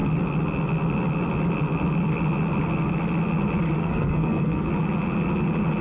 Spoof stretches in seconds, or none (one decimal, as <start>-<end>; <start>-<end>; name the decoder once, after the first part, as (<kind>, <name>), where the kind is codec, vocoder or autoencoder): 3.8-4.7 (codec, SNAC)